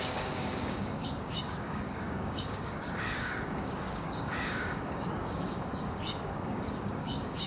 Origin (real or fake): fake